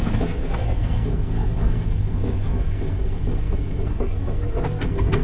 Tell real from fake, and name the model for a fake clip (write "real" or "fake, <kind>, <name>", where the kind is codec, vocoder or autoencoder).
fake, codec, SNAC